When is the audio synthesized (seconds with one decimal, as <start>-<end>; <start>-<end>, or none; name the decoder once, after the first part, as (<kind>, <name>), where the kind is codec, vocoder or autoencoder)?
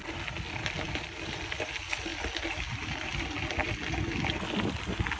none